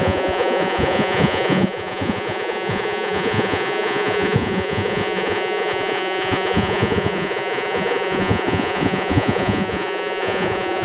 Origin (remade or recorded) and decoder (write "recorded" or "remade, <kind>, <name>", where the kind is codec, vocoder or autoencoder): remade, vocoder, Vocos